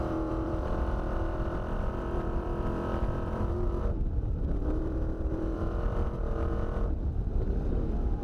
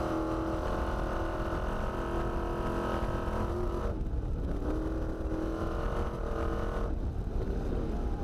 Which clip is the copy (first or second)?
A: first